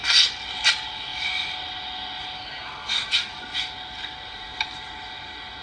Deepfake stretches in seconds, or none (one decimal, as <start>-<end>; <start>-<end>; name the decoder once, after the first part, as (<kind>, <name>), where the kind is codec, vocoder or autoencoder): 0.0-0.6 (vocoder, BigVGAN v2)